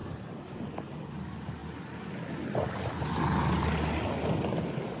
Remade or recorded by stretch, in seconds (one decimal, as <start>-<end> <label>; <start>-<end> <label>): 0.0-1.0 remade; 1.0-5.0 recorded